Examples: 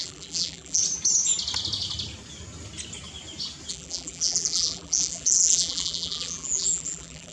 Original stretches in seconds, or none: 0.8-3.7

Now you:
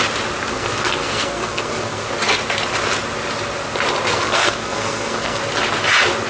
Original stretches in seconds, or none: 0.0-0.5; 2.1-4.1; 5.4-6.3

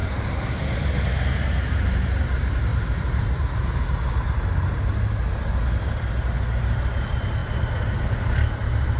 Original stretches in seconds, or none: 2.2-2.7; 3.3-9.0

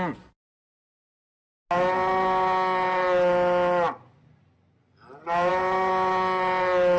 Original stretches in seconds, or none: 0.0-7.0

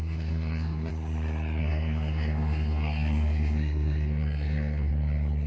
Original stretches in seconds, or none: 0.9-1.6; 4.9-5.5

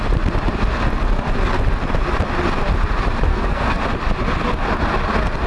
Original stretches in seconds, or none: 0.0-3.3; 3.8-5.5